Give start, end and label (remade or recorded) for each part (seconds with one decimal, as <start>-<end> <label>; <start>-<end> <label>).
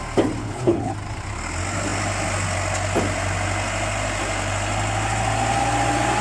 0.0-0.4 recorded; 0.4-0.9 remade; 0.9-6.2 recorded